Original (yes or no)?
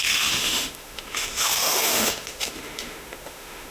no